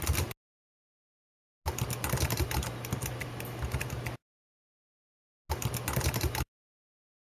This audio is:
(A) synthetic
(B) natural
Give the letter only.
B